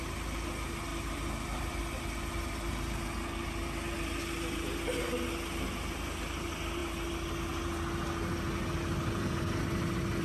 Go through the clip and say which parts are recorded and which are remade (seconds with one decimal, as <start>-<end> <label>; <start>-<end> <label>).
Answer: 0.0-10.2 recorded